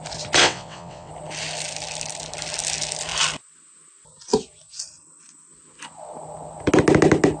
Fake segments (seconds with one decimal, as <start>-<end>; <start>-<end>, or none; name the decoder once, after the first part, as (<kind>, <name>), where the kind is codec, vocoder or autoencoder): 0.4-1.1 (vocoder, WaveNeXt)